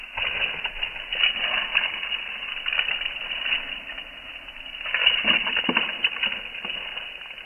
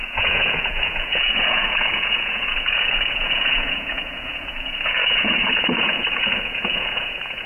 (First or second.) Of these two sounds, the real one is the first